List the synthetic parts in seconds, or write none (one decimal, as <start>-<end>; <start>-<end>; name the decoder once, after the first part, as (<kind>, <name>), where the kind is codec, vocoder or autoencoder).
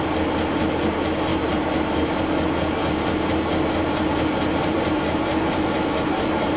1.3-2.2 (vocoder, BigVGAN v2); 2.8-6.6